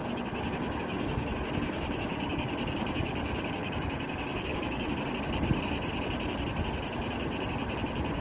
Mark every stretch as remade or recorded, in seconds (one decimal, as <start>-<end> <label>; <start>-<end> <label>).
0.0-4.9 remade; 4.9-8.2 recorded